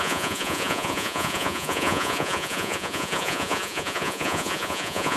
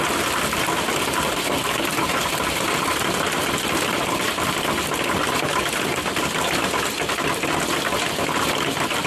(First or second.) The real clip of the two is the second